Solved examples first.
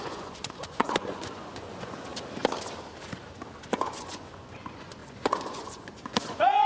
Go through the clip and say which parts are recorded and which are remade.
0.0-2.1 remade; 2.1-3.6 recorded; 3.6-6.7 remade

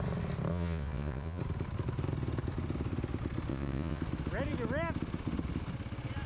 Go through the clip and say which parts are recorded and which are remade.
0.0-0.5 recorded; 0.5-1.4 remade; 1.4-3.5 recorded; 3.5-4.0 remade; 4.0-6.3 recorded

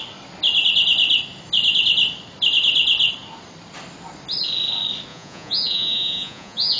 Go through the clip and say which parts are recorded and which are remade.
0.0-5.1 recorded; 5.1-6.8 remade